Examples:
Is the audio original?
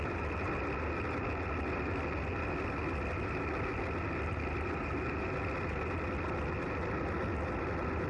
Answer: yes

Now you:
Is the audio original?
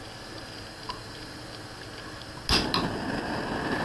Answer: yes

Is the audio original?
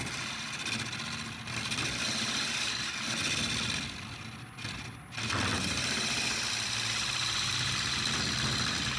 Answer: yes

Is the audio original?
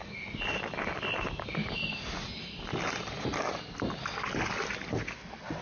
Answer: yes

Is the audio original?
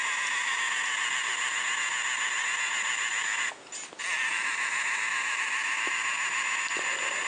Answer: yes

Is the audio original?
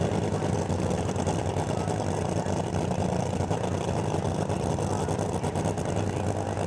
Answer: yes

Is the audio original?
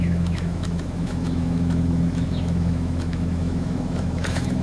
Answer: no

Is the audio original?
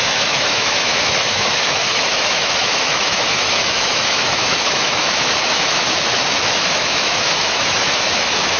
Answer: no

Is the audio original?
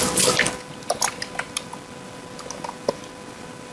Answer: yes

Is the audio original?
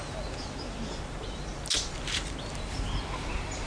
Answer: yes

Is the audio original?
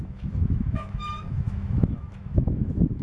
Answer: no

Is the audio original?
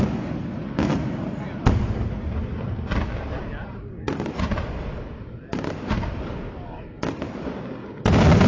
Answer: yes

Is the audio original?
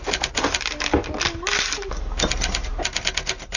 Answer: yes